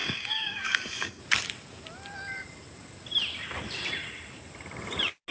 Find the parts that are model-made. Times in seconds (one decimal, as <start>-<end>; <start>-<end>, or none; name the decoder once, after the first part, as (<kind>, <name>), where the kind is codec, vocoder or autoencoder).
0.0-1.2 (codec, DAC)